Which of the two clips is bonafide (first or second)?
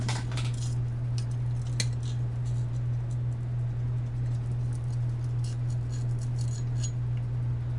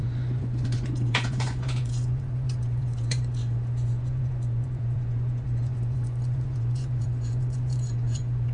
first